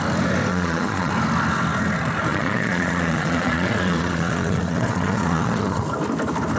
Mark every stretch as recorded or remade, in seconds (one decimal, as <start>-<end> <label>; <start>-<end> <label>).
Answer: 0.0-0.5 recorded; 0.5-1.1 remade; 1.1-2.3 recorded; 2.3-5.8 remade; 5.8-6.6 recorded